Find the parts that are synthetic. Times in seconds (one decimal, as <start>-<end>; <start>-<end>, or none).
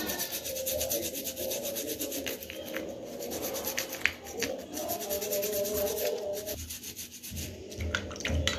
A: none